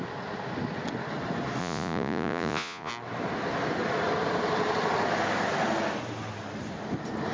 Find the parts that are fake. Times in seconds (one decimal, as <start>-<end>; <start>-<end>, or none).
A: 1.6-2.9